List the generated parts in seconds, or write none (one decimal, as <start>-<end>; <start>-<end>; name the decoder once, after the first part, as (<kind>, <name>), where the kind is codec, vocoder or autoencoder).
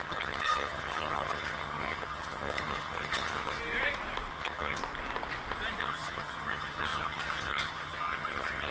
0.0-3.6 (vocoder, HiFi-GAN); 4.3-4.8; 5.8-8.7